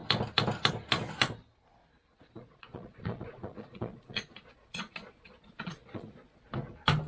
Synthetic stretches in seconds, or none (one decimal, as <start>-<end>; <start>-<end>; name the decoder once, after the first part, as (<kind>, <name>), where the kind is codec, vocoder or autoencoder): 2.1-6.4 (vocoder, Vocos)